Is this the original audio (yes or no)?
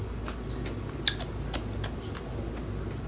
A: yes